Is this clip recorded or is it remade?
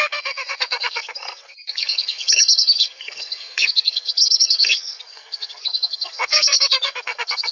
remade